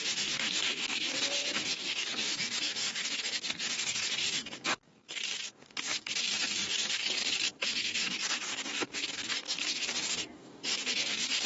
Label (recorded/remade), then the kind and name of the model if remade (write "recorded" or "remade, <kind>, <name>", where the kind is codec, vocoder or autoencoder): remade, codec, DAC